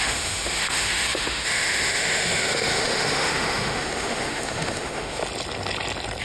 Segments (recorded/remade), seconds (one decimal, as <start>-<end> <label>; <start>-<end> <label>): 0.0-5.2 remade; 5.2-6.2 recorded